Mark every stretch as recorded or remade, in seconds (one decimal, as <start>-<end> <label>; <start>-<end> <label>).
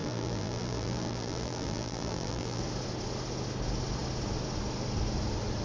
0.0-2.6 remade; 2.6-5.6 recorded